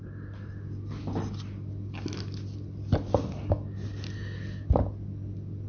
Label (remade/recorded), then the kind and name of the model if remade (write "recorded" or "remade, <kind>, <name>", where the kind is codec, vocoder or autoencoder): recorded